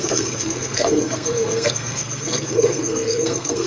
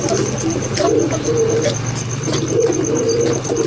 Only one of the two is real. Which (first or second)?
second